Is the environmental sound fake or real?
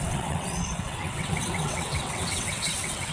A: fake